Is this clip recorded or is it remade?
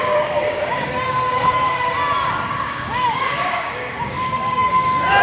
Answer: remade